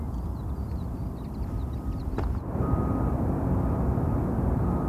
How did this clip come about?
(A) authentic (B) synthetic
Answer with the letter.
A